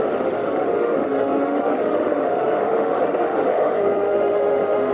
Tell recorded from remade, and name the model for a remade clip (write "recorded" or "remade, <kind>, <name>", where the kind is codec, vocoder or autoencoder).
remade, autoencoder, DAC-VAE